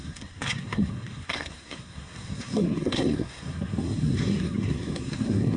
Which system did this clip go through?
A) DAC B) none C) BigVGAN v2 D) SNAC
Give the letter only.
D